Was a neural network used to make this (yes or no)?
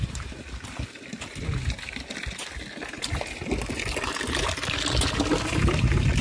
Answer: no